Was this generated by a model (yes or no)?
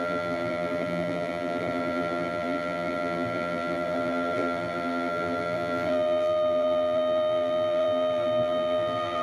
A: yes